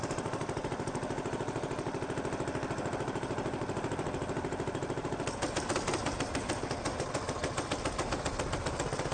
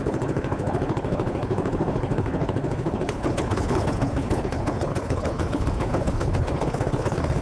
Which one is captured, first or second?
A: first